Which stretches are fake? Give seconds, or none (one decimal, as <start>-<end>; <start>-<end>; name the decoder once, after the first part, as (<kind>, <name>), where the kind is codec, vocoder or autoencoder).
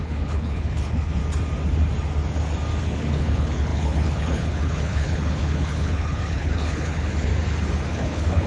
0.0-1.2 (codec, HILCodec); 2.8-7.3; 7.9-8.5